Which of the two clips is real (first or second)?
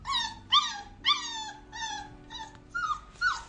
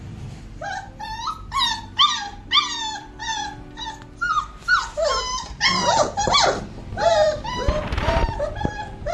first